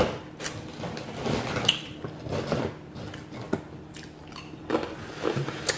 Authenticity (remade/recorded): recorded